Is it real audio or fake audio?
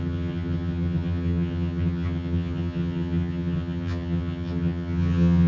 fake